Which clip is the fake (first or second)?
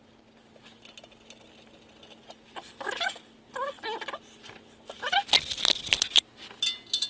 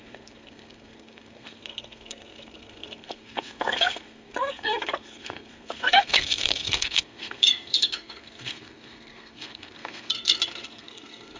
second